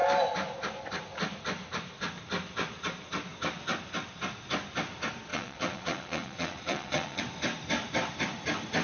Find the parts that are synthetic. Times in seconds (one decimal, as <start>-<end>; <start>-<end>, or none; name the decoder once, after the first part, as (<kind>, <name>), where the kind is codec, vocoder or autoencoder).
5.3-7.2 (vocoder, WaveNeXt)